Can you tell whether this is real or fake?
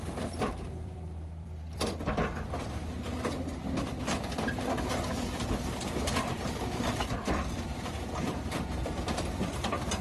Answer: fake